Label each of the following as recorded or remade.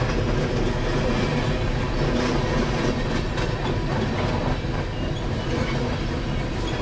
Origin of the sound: recorded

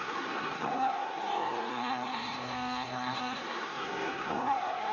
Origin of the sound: remade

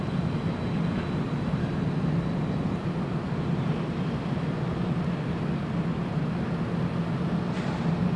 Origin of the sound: recorded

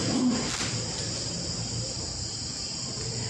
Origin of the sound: recorded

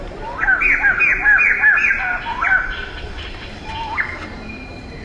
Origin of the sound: recorded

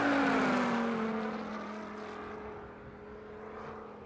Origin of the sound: recorded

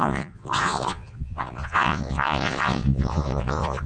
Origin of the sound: remade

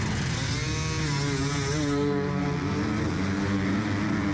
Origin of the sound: recorded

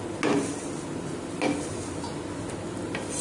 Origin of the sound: recorded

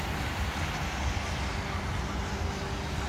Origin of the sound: recorded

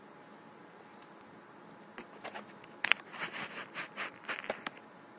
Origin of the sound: recorded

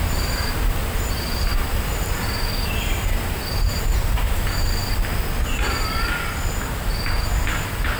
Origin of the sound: recorded